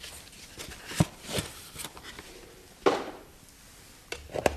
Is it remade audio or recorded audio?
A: recorded